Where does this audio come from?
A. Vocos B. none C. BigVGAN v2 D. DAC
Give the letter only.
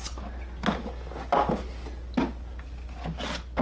B